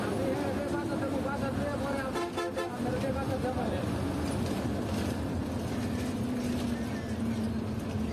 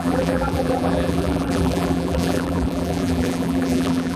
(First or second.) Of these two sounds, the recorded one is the first